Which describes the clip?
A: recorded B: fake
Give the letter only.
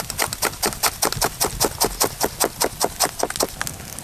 A